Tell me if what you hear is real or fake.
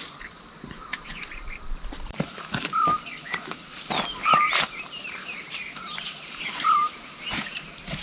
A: fake